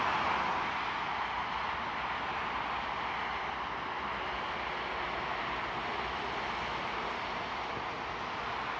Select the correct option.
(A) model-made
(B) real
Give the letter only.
B